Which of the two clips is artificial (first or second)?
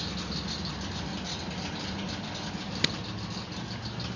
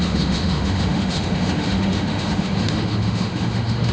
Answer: second